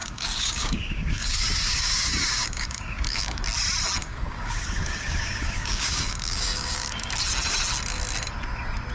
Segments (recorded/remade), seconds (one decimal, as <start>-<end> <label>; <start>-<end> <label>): 0.0-3.4 remade; 3.4-4.0 recorded; 4.0-7.1 remade; 7.1-8.9 recorded